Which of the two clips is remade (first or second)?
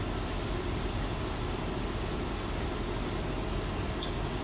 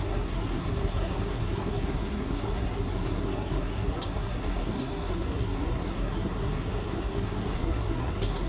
second